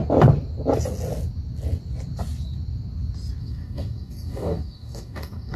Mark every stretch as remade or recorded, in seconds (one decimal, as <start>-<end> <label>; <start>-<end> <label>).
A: 0.0-3.4 recorded; 3.4-5.6 remade

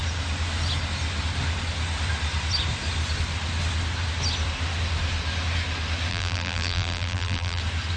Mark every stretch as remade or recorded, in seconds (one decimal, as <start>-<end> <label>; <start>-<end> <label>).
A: 0.0-6.1 recorded; 6.1-7.6 remade; 7.6-8.0 recorded

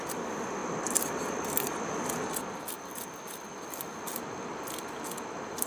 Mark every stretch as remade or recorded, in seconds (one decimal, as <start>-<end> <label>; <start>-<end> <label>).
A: 0.0-5.7 recorded

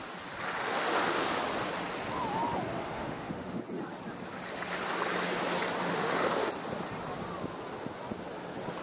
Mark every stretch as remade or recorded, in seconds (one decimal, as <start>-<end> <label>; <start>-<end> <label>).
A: 0.0-0.6 recorded; 0.6-1.3 remade; 1.3-2.8 recorded; 2.8-3.6 remade; 3.6-5.9 recorded; 5.9-6.5 remade; 6.5-8.8 recorded

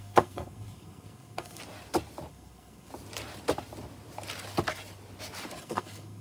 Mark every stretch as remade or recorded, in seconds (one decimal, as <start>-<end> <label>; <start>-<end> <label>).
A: 0.0-1.6 remade; 1.6-2.3 recorded; 2.3-2.9 remade; 2.9-5.6 recorded; 5.6-6.2 remade

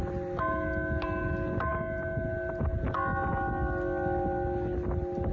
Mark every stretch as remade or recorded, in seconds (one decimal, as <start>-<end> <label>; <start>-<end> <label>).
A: 0.0-5.3 recorded

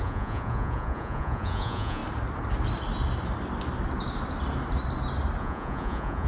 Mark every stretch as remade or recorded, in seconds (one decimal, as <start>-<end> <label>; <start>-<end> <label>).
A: 0.0-2.0 remade; 2.0-5.4 recorded; 5.4-6.3 remade

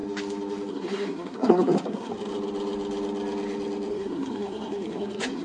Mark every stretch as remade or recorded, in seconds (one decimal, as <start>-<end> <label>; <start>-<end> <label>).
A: 0.0-0.7 recorded; 0.7-2.1 remade; 2.1-3.9 recorded; 3.9-5.4 remade